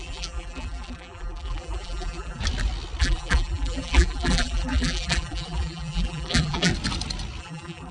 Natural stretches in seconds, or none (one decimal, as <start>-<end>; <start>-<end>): 2.4-3.0; 6.7-7.4